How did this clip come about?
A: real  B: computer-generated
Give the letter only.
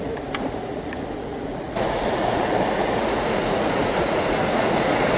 B